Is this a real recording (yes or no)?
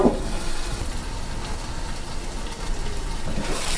yes